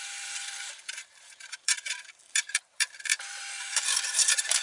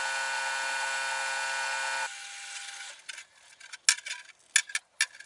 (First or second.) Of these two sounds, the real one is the second